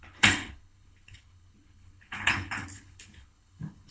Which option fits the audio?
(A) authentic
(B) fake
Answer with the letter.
B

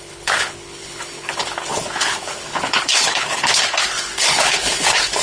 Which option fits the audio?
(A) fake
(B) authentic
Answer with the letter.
A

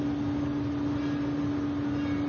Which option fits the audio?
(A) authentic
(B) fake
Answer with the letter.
A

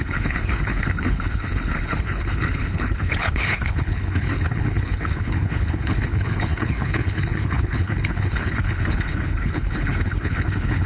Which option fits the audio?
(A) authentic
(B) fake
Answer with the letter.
B